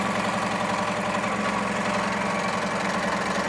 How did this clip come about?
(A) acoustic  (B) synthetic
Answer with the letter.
A